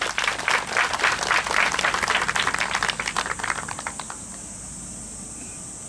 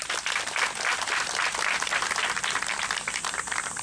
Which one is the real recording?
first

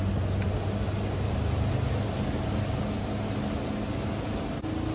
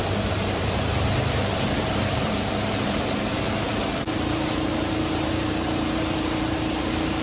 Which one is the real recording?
first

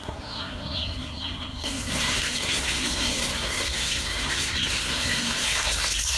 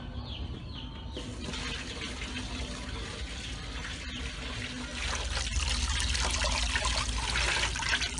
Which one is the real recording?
second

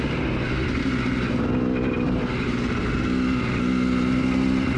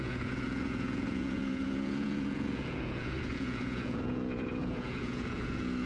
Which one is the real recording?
first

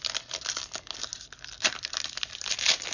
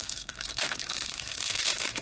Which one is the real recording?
first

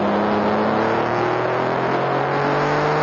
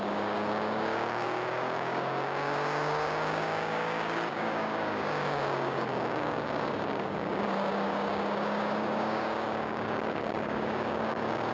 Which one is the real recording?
first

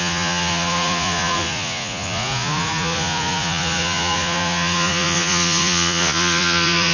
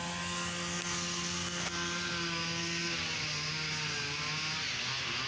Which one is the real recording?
second